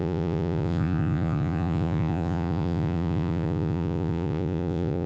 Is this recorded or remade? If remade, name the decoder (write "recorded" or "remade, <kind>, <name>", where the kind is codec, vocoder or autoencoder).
remade, vocoder, Vocos